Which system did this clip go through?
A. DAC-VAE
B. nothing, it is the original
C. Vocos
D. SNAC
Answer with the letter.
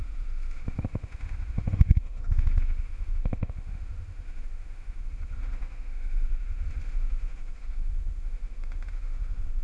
A